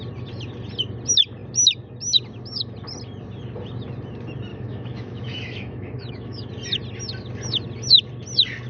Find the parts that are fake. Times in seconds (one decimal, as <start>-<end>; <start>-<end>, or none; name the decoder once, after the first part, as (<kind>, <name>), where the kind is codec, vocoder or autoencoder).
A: 4.5-6.5 (autoencoder, DAC-VAE)